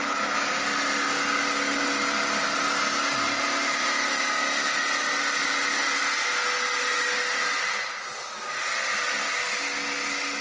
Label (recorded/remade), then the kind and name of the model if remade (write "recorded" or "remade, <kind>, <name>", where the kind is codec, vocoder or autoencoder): recorded